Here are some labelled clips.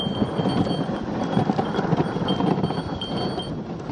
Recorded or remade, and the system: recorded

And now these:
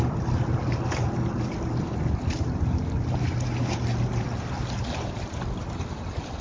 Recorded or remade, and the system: recorded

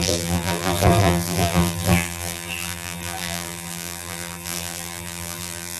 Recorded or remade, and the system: remade, vocoder, BigVGAN v2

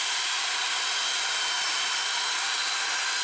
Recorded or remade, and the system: remade, vocoder, BigVGAN v2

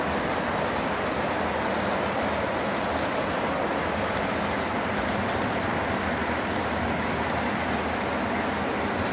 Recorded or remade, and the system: recorded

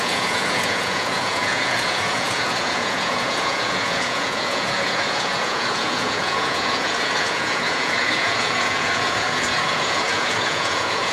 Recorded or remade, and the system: remade, vocoder, Vocos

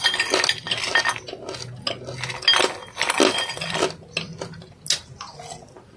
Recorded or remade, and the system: recorded